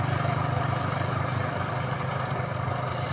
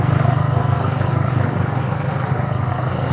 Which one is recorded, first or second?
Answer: first